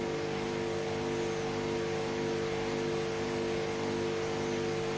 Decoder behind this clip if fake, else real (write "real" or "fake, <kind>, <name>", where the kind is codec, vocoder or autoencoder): real